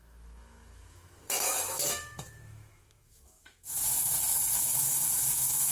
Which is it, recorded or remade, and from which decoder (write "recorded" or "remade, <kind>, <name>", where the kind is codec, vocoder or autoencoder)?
remade, autoencoder, DAC-VAE